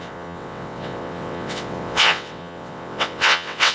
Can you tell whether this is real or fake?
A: fake